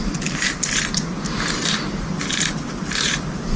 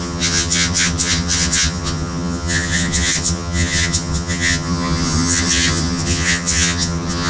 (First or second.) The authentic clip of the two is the first